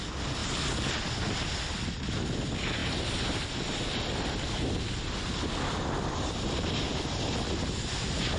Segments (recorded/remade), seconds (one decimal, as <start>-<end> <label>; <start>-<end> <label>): 0.0-8.4 recorded